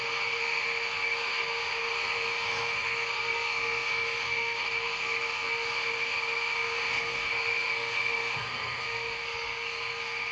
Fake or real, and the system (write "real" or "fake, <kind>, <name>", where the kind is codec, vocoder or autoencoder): fake, codec, SNAC